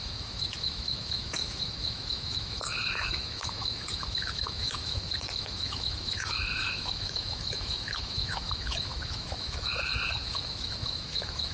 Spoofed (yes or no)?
yes